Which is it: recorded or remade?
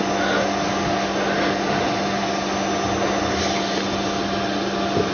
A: recorded